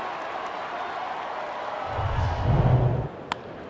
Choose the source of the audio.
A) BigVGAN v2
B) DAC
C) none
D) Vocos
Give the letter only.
C